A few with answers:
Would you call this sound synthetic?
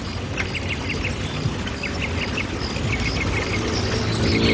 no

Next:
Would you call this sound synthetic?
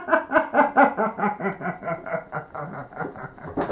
no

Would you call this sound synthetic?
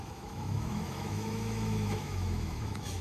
yes